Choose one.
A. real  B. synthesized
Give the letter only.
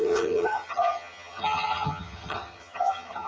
B